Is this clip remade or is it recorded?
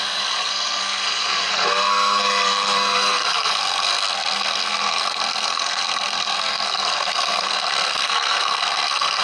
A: remade